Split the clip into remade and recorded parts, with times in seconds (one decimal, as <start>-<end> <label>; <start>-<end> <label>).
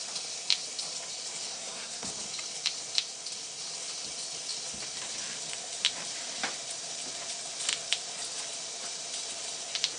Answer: 0.0-1.5 recorded; 1.5-2.1 remade; 2.1-10.0 recorded